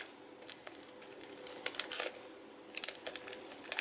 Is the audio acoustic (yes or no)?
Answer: yes